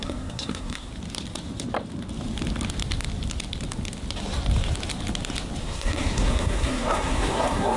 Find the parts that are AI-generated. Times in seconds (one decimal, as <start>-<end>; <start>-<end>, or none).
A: 0.0-0.9; 5.6-7.8